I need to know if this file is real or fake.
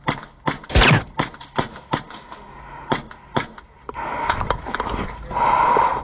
real